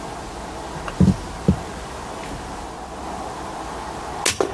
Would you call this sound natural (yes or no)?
yes